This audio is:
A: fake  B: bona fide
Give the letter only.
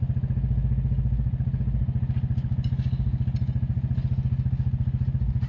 B